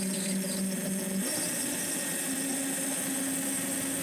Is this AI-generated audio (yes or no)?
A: no